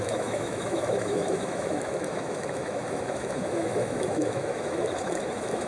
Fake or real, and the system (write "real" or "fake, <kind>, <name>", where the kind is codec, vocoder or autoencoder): fake, autoencoder, DAC-VAE